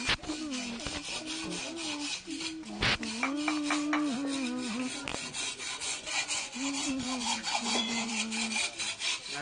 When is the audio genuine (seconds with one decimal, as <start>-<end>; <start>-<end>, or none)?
0.0-5.1; 8.1-9.4